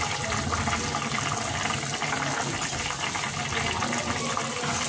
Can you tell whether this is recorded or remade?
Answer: recorded